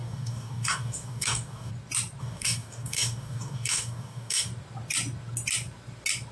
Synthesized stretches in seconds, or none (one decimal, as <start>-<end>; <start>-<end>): 0.0-1.7; 2.2-4.5